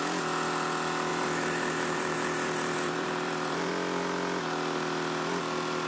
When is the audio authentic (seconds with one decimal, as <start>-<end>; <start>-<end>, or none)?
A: 0.0-1.1; 3.7-5.9